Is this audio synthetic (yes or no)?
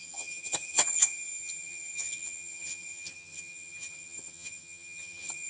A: yes